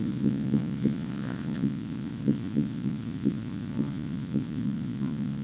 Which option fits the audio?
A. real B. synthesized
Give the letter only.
B